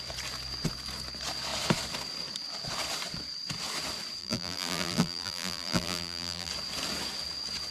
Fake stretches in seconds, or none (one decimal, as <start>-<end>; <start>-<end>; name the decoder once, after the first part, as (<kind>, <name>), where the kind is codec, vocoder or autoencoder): 4.2-6.5 (vocoder, BigVGAN v2)

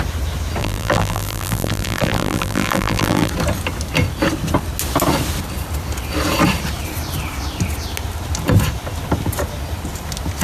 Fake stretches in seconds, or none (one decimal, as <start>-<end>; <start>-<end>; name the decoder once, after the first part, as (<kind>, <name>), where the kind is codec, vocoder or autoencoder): 0.6-3.3 (vocoder, BigVGAN v2)